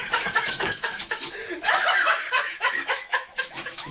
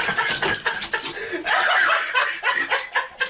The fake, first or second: first